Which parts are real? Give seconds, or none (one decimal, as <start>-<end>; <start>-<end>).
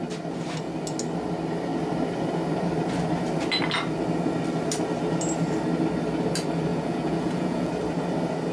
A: 0.0-6.7; 7.7-8.5